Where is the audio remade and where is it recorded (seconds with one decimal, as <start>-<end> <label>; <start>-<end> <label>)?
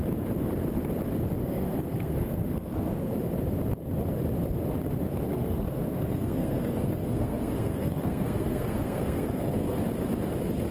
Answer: 0.0-1.4 recorded; 1.4-3.1 remade; 3.1-5.3 recorded; 5.3-9.8 remade; 9.8-10.7 recorded